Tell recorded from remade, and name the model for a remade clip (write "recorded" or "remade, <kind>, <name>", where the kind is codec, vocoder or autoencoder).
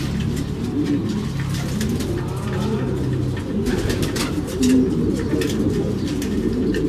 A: recorded